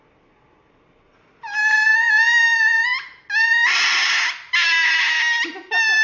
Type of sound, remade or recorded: recorded